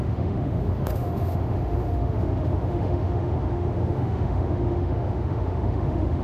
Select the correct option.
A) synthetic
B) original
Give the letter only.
A